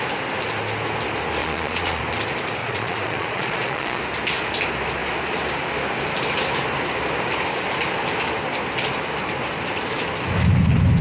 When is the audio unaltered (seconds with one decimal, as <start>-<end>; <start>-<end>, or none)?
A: 0.0-1.4; 2.0-2.6; 4.0-11.0